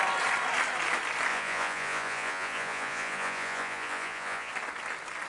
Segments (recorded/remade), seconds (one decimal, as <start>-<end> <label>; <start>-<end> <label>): 0.0-1.3 recorded; 1.3-4.5 remade; 4.5-5.3 recorded